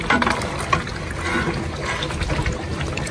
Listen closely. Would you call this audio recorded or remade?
recorded